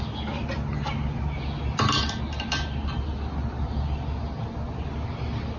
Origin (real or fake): real